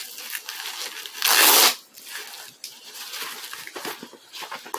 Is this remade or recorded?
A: recorded